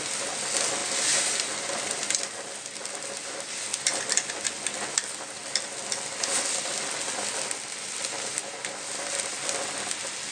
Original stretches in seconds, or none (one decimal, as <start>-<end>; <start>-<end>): 0.0-0.8; 2.3-3.7; 4.3-10.3